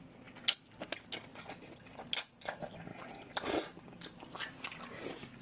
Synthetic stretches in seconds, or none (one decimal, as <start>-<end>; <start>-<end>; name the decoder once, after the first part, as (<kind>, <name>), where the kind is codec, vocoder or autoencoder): 1.3-1.9 (vocoder, BigVGAN v2)